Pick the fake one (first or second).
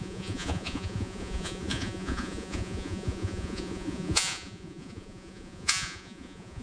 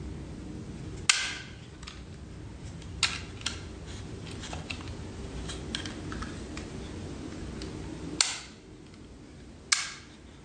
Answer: first